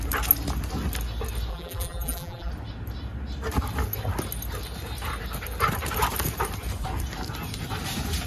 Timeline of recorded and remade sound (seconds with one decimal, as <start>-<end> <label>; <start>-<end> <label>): 0.0-1.5 recorded; 1.5-2.5 remade; 2.5-8.3 recorded